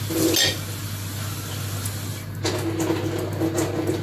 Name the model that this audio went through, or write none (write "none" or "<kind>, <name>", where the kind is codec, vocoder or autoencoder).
none